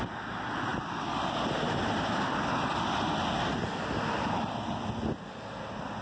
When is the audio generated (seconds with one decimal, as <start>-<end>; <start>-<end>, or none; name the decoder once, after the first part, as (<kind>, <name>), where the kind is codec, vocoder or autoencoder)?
none